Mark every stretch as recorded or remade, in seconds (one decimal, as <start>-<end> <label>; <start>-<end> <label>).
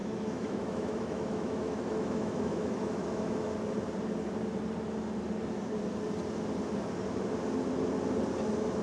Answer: 0.0-3.5 remade; 3.5-8.8 recorded